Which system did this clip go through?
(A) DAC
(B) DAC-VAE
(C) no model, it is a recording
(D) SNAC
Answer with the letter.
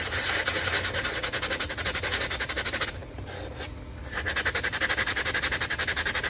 C